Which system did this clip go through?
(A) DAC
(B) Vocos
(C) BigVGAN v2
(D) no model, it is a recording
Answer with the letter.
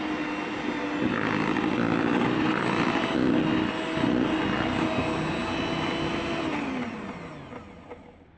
D